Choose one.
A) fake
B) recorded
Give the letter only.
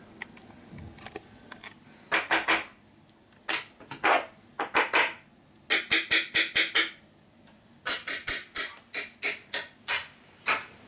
B